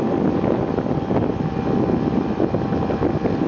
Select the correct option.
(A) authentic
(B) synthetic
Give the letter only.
A